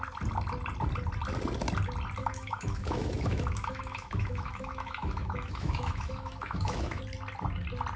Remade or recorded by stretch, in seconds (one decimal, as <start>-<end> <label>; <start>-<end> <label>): 0.0-2.2 recorded; 2.2-7.0 remade; 7.0-8.0 recorded